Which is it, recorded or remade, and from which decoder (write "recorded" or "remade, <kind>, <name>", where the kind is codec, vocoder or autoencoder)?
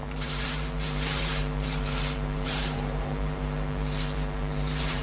remade, vocoder, BigVGAN v2